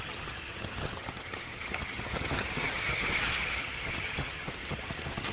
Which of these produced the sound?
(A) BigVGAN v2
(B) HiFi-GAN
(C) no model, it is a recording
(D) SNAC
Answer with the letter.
B